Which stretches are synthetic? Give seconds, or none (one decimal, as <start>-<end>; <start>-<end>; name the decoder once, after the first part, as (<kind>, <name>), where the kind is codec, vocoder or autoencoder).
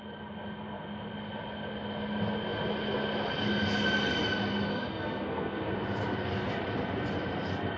4.7-5.7 (codec, SNAC)